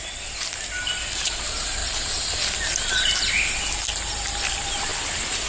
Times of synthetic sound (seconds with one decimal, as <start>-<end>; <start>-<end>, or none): none